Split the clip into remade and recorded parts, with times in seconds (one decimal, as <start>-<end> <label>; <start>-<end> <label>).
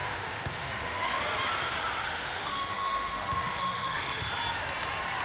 0.0-1.2 remade; 1.2-2.0 recorded; 2.0-4.3 remade; 4.3-5.2 recorded